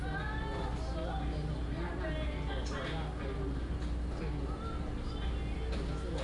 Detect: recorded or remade recorded